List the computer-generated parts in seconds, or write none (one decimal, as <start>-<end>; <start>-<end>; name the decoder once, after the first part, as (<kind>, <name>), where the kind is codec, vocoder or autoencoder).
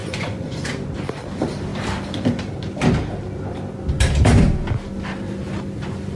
0.0-0.7 (vocoder, Vocos)